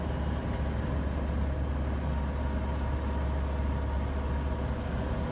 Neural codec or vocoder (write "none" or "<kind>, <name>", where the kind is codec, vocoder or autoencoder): none